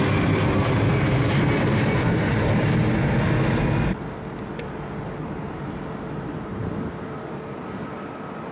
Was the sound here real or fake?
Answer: real